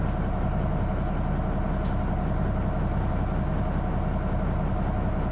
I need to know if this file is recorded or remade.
recorded